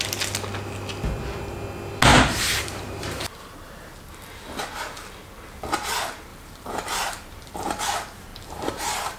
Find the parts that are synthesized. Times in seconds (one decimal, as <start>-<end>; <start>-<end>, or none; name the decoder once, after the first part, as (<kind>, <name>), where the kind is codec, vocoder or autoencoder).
2.1-3.4 (vocoder, BigVGAN v2); 6.3-7.8; 8.3-9.2